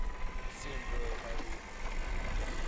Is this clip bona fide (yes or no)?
yes